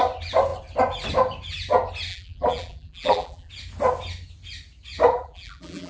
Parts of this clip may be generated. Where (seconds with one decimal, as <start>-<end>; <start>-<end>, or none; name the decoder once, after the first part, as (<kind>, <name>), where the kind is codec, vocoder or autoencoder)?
2.1-3.5 (vocoder, BigVGAN v2); 5.1-5.9